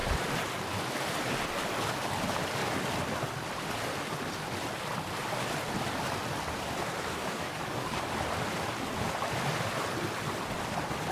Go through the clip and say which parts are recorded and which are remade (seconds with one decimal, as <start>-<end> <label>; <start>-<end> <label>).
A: 0.0-7.2 recorded; 7.2-8.0 remade; 8.0-11.1 recorded